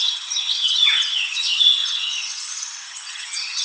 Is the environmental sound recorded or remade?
remade